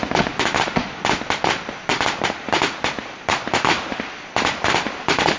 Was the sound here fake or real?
real